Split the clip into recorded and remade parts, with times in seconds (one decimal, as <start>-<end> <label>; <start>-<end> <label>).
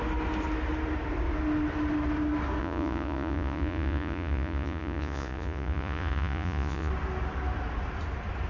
0.0-2.6 recorded; 2.6-6.9 remade; 6.9-8.5 recorded